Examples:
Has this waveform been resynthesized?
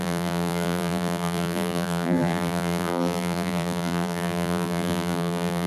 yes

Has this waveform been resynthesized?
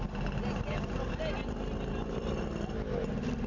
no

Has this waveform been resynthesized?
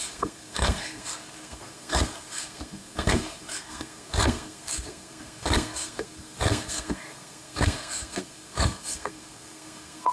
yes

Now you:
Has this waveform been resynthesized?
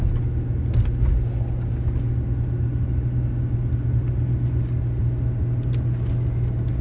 no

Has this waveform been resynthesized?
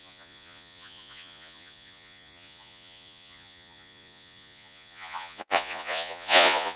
yes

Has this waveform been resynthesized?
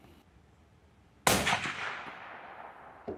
no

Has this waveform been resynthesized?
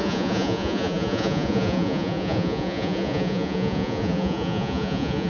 yes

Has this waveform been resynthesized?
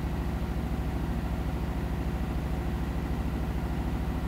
no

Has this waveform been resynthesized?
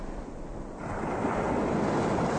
no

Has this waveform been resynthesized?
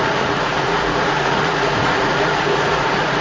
yes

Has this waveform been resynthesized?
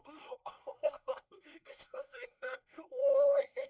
yes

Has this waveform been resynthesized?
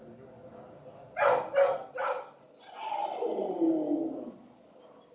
no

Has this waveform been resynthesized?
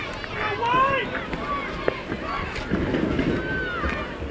no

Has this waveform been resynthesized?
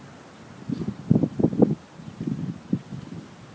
no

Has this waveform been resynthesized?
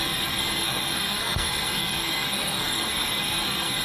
yes